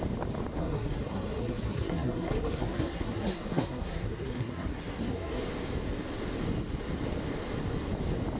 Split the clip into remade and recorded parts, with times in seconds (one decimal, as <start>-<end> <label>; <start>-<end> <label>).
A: 0.0-0.6 recorded; 0.6-5.4 remade; 5.4-8.4 recorded